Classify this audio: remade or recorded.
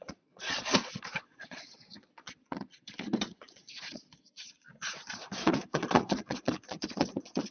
remade